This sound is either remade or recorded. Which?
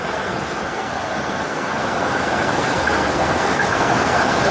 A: remade